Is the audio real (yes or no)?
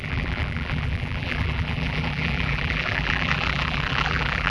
no